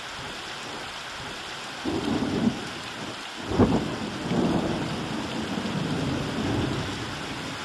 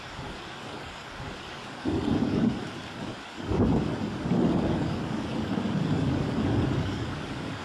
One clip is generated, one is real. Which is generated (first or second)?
second